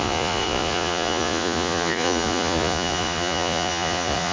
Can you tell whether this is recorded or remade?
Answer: remade